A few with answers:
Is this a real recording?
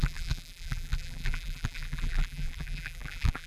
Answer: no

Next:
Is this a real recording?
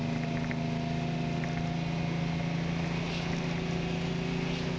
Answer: yes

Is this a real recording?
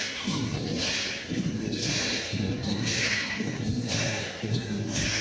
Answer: no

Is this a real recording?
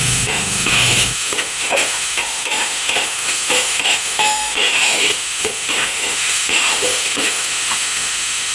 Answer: no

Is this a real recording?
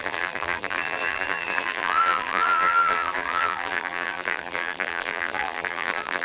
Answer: no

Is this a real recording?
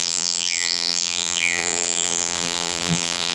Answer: no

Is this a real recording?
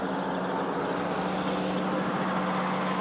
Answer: yes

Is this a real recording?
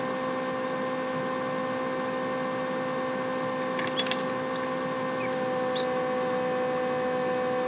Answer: yes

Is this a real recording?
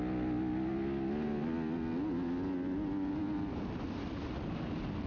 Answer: yes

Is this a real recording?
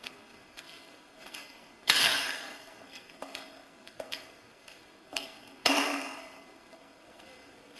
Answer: no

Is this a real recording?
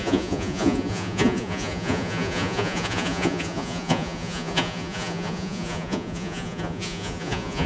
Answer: no